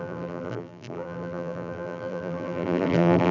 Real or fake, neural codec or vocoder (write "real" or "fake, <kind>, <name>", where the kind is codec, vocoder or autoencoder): fake, vocoder, BigVGAN v2